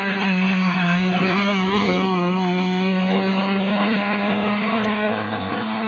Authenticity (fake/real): fake